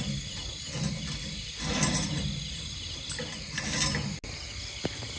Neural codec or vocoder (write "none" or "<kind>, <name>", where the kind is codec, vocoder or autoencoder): none